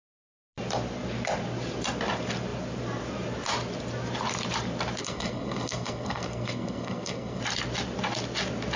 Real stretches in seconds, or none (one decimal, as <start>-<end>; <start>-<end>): 0.0-5.0; 7.4-8.8